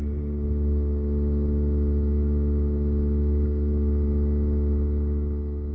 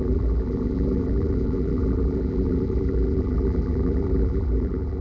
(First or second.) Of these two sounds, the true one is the first